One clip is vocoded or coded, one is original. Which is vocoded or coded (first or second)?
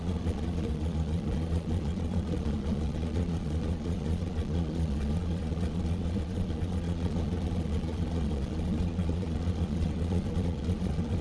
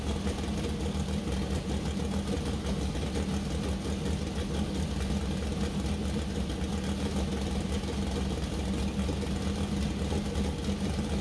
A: first